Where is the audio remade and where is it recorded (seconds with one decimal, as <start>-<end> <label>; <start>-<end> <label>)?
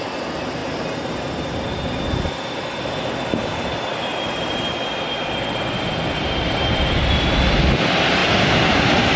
0.0-8.2 recorded; 8.2-9.2 remade